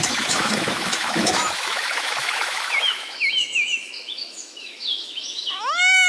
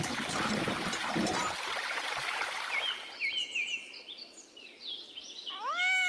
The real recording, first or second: second